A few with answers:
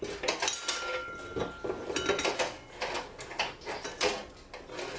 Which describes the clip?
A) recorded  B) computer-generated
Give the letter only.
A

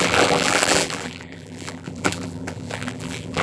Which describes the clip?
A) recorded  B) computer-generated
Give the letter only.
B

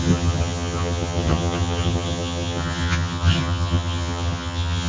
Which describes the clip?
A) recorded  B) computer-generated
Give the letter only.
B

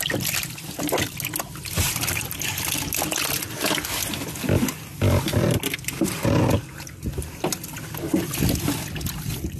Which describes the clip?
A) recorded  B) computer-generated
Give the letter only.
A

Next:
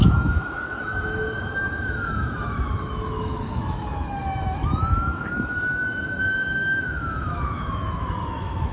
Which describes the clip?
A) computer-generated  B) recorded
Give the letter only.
A